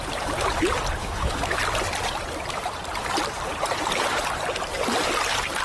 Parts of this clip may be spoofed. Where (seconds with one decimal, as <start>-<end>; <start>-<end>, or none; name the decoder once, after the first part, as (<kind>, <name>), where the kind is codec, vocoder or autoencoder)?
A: 1.0-1.6 (autoencoder, DAC-VAE)